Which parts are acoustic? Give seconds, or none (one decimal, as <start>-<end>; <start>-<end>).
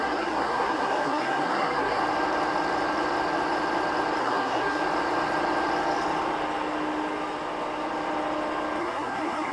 2.0-4.2; 4.8-8.8